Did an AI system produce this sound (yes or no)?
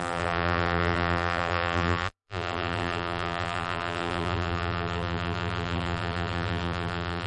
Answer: yes